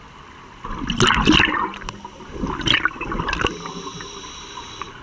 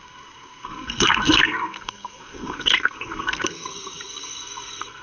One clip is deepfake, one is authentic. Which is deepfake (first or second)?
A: second